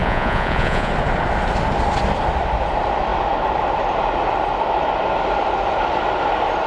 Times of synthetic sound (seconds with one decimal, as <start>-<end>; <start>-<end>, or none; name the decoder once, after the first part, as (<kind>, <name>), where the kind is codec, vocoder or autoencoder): 0.0-0.9 (vocoder, Vocos)